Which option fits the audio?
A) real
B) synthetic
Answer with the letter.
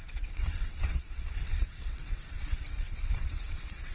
B